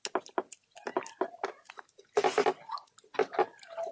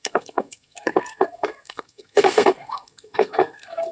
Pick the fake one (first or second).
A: second